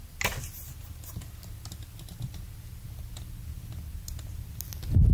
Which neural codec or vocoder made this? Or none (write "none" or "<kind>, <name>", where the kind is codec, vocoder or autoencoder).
none